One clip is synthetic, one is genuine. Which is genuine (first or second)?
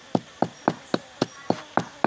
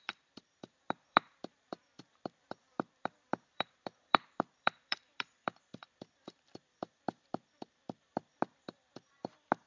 first